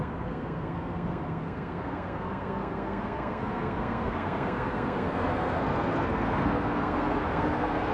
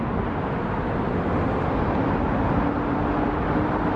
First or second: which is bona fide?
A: second